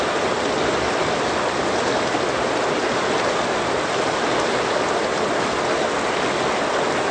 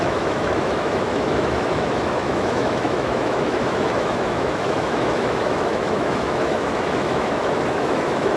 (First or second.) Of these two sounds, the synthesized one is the second